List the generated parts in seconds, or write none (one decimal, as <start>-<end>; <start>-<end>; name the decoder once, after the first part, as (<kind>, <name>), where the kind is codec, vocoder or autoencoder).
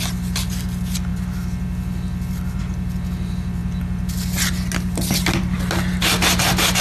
none